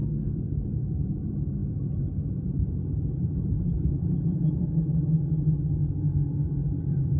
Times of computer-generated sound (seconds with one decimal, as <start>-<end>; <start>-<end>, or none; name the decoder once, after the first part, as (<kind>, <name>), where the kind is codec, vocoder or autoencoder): 0.0-4.9 (vocoder, BigVGAN v2); 6.8-7.2